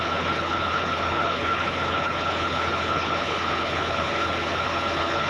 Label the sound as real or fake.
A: fake